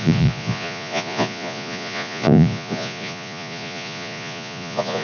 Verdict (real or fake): fake